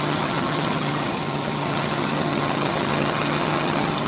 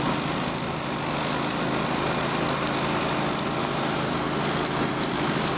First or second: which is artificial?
first